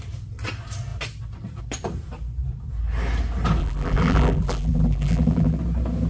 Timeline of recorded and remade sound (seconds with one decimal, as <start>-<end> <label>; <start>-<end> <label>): 0.0-3.6 recorded; 3.6-5.6 remade; 5.6-6.1 recorded